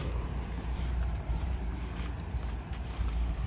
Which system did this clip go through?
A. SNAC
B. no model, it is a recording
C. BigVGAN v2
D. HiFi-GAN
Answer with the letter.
C